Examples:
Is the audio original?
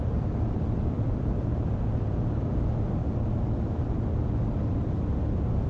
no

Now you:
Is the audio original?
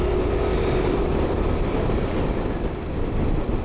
yes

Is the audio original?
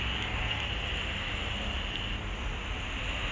yes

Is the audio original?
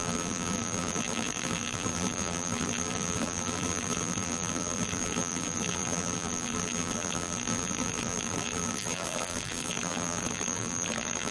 no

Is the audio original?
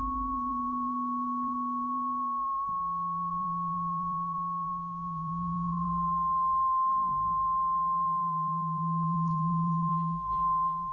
no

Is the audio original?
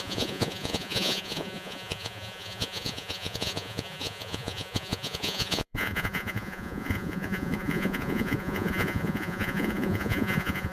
no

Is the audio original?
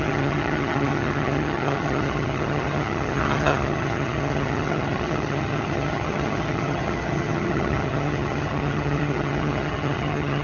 no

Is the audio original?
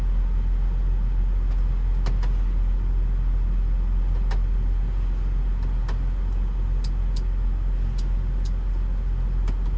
yes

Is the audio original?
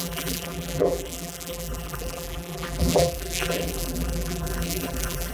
no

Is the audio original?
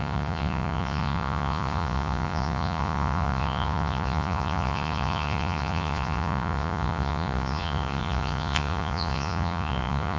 no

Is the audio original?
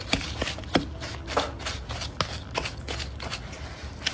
yes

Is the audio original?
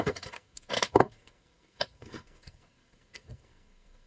no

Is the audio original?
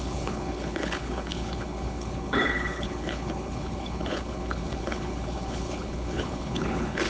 no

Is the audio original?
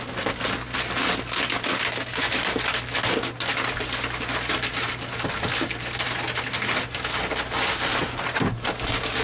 yes